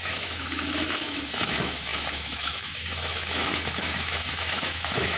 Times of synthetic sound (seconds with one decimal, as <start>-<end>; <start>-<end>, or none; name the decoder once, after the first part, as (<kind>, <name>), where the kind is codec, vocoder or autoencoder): 0.0-5.2 (autoencoder, DAC-VAE)

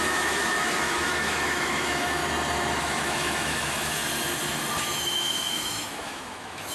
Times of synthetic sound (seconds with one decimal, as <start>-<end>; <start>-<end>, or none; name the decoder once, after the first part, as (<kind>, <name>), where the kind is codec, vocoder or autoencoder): 0.0-2.2 (autoencoder, DAC-VAE); 2.8-4.0; 4.8-6.7

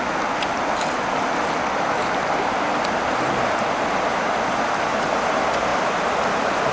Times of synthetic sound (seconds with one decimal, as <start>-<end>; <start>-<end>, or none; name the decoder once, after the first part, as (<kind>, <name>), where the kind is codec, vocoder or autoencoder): none

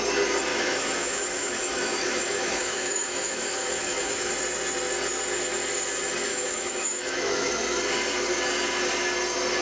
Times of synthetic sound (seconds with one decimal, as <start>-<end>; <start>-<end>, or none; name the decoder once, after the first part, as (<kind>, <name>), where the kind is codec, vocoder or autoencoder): 0.5-4.3 (autoencoder, DAC-VAE); 6.3-7.5

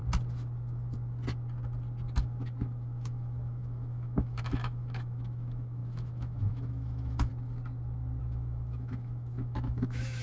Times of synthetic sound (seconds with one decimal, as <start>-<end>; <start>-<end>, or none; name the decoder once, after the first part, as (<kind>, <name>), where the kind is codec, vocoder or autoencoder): 2.2-7.3 (autoencoder, DAC-VAE); 8.2-10.2